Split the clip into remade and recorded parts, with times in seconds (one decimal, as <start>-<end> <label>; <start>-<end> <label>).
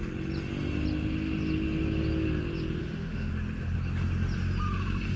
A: 0.0-2.8 recorded; 2.8-3.3 remade; 3.3-5.2 recorded